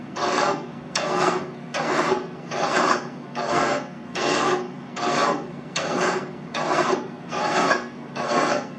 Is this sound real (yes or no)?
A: no